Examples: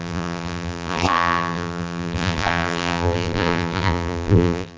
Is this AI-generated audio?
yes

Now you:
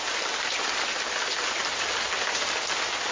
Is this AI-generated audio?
no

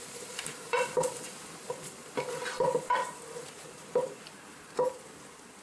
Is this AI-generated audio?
yes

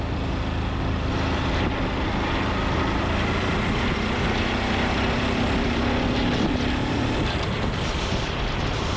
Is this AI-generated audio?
no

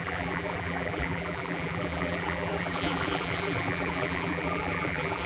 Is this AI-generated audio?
yes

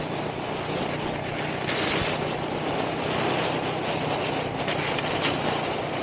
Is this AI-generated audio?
no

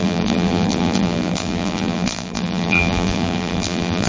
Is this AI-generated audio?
yes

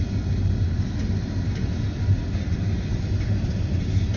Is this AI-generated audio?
no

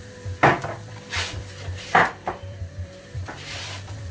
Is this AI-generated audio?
yes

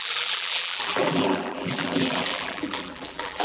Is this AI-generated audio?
yes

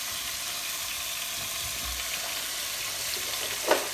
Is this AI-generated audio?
no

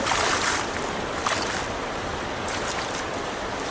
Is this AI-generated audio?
yes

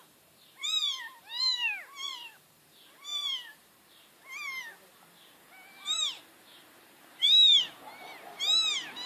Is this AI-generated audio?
yes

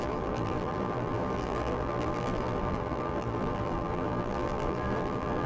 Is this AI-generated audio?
yes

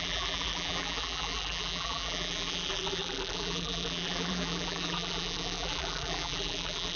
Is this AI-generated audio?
yes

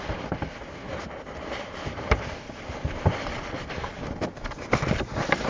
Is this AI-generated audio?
yes